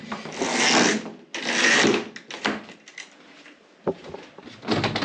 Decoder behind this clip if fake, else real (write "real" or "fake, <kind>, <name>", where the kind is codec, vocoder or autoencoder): real